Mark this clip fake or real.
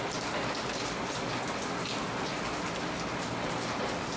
real